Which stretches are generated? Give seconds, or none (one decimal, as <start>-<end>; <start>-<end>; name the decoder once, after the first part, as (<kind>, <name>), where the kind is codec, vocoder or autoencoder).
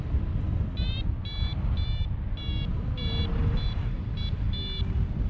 2.7-3.4 (vocoder, BigVGAN v2)